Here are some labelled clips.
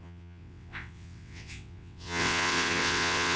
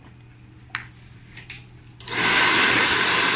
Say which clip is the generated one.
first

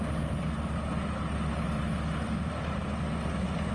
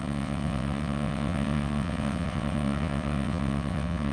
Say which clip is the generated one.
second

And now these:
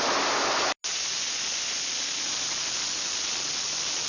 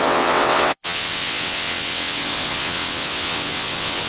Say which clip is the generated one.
second